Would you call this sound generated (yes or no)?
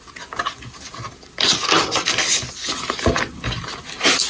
no